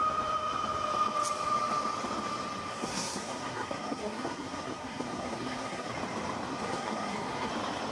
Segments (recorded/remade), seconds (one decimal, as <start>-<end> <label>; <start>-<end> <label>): 0.0-2.7 recorded; 2.7-5.9 remade; 5.9-6.5 recorded; 6.5-7.5 remade; 7.5-7.9 recorded